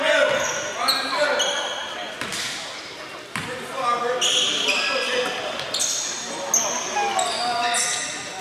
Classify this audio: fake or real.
real